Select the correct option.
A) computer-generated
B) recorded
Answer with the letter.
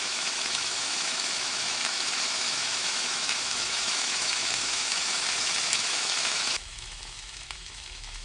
A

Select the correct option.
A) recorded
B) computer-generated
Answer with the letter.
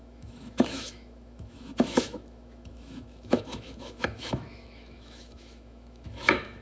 B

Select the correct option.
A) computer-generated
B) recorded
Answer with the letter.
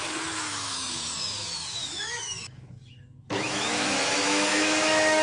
A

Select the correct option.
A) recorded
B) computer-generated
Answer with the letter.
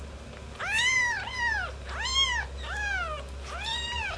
A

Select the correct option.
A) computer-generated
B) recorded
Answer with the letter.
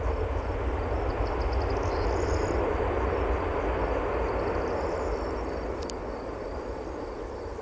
B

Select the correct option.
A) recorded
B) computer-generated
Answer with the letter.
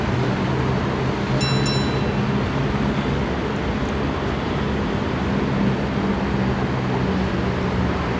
A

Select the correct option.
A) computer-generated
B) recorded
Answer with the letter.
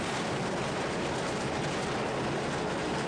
B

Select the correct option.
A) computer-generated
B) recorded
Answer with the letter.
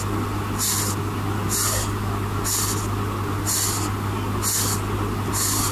B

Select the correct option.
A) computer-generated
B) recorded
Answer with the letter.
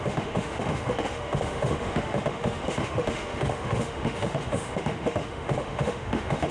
A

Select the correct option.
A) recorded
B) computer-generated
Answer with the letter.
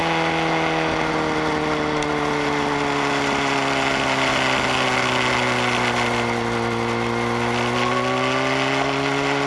A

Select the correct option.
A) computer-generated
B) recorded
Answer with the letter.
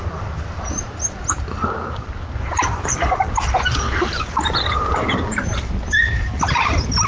B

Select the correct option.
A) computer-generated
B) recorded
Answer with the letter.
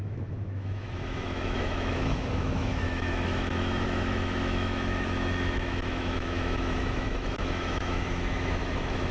A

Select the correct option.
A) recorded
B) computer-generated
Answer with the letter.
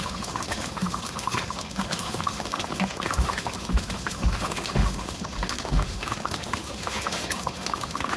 B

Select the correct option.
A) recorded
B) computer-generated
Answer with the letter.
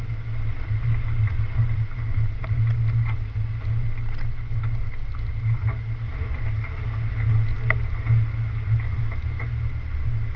A